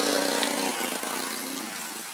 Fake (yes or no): no